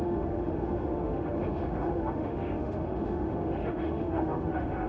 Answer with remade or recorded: remade